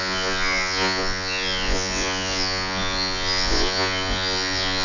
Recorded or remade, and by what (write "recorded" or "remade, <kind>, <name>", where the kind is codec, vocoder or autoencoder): remade, vocoder, Vocos